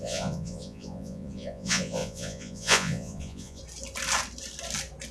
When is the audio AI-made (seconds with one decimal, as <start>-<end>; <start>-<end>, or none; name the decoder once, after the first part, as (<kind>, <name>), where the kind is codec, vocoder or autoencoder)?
0.0-3.6 (vocoder, Vocos)